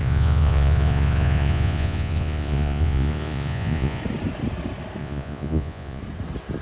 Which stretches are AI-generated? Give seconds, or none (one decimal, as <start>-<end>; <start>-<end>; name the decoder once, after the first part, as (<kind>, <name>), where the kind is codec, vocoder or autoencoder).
0.0-4.0 (vocoder, Vocos); 5.0-6.0